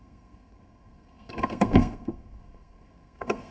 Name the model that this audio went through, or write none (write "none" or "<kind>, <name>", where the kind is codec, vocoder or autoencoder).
codec, SNAC